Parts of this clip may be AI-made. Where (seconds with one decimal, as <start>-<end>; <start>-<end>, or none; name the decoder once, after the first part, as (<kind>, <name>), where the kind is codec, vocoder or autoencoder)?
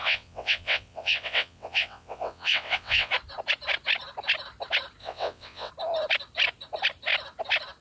0.0-3.1 (vocoder, WaveNeXt); 5.0-5.7